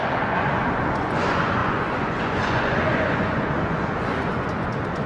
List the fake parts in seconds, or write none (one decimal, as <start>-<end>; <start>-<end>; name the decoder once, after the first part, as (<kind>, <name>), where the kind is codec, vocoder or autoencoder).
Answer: 0.0-5.1 (vocoder, Vocos)